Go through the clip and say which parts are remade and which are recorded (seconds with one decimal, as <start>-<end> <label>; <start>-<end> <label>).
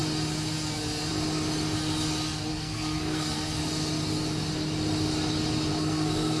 0.0-2.5 recorded; 2.5-3.6 remade; 3.6-5.7 recorded; 5.7-6.4 remade